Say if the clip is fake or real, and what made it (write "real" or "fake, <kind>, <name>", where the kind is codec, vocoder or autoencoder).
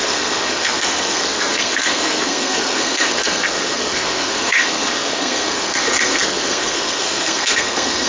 fake, codec, SNAC